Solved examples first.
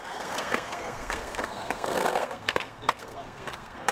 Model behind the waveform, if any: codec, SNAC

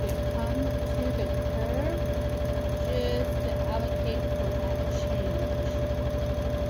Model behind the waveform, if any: none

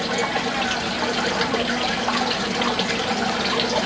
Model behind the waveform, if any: none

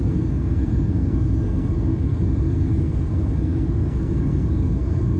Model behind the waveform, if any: codec, SNAC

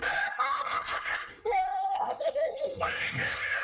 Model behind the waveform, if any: codec, SNAC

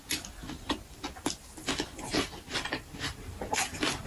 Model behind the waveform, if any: none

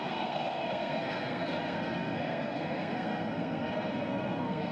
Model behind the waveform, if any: codec, SNAC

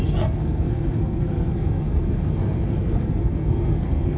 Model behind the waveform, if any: codec, SNAC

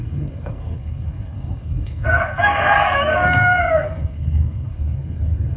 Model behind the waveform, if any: codec, SNAC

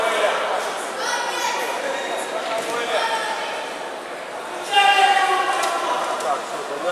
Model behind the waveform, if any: none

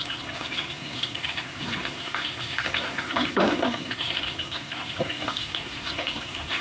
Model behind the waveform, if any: codec, SNAC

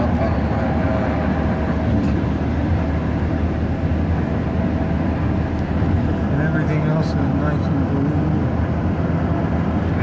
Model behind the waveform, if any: none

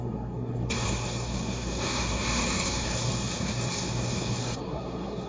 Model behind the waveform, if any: codec, SNAC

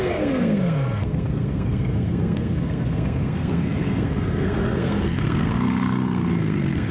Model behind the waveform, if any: codec, SNAC